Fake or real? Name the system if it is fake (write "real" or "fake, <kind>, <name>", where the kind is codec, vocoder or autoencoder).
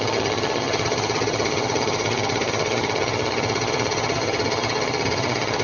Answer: fake, vocoder, HiFi-GAN